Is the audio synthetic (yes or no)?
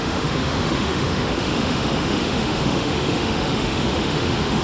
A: yes